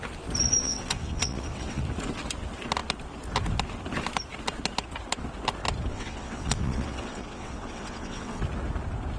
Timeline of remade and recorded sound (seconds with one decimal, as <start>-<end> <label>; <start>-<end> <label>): 0.0-0.6 recorded; 0.6-1.8 remade; 1.8-5.9 recorded; 5.9-8.4 remade; 8.4-9.2 recorded

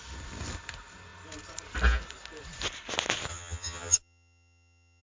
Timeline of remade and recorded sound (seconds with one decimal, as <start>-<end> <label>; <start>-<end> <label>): 0.0-3.3 recorded; 3.3-5.0 remade